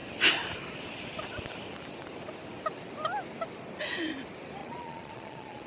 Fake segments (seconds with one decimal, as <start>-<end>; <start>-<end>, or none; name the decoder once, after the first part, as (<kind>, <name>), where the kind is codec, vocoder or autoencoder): 4.6-5.7 (vocoder, Vocos)